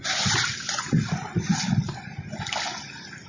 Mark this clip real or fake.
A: real